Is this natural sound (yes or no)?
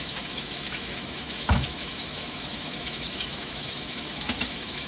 no